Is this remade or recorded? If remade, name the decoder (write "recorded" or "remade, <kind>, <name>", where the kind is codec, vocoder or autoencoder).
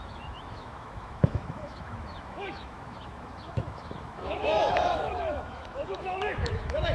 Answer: remade, autoencoder, DAC-VAE